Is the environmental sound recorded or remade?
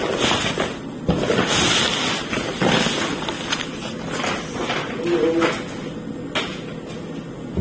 recorded